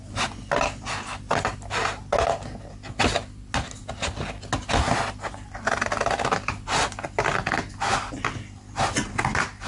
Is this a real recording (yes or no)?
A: yes